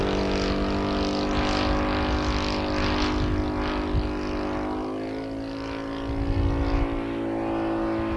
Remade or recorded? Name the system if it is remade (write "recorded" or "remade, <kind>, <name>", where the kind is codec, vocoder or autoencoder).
recorded